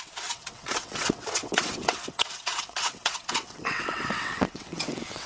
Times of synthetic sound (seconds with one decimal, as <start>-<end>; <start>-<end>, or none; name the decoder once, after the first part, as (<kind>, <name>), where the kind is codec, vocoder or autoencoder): 0.0-5.3 (vocoder, WaveNeXt)